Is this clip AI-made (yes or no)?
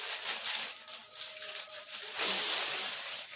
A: no